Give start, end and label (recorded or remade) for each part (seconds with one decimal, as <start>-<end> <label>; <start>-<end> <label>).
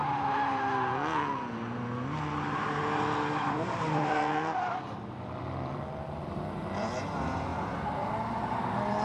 0.0-3.4 recorded; 3.4-7.5 remade; 7.5-8.3 recorded; 8.3-9.0 remade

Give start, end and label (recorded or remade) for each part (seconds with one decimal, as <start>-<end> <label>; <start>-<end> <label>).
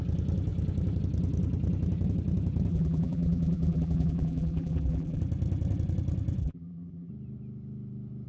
0.0-2.7 recorded; 2.7-5.2 remade; 5.2-6.4 recorded; 6.4-7.1 remade; 7.1-8.3 recorded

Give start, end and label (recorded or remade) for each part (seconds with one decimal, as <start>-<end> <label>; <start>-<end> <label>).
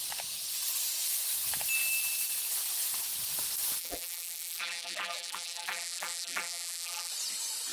0.0-3.8 recorded; 3.8-7.1 remade; 7.1-7.7 recorded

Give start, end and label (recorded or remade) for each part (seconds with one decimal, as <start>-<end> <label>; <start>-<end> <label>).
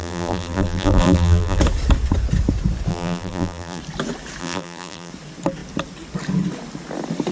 0.0-1.6 remade; 1.6-2.9 recorded; 2.9-3.8 remade; 3.8-4.4 recorded; 4.4-5.1 remade; 5.1-7.3 recorded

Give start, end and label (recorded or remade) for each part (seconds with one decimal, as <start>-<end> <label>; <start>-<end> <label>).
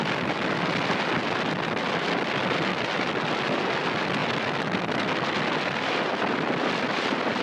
0.0-7.4 recorded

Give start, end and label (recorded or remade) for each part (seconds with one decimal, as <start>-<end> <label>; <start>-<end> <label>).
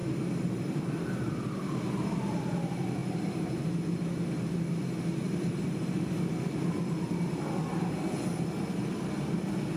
0.0-0.6 recorded; 0.6-3.0 remade; 3.0-5.0 recorded; 5.0-9.8 remade